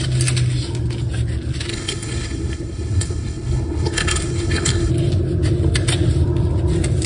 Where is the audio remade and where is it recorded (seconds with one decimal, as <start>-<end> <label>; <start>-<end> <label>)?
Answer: 0.0-1.7 recorded; 1.7-4.9 remade; 4.9-7.1 recorded